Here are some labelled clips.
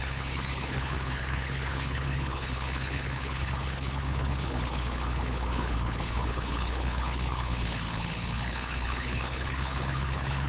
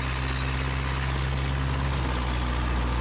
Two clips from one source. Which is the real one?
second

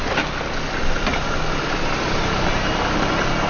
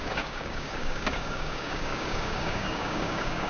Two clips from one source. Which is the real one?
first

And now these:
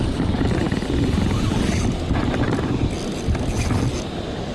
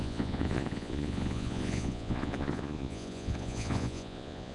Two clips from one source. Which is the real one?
first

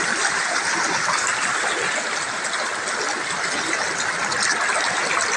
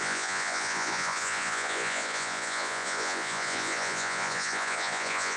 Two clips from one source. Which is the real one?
first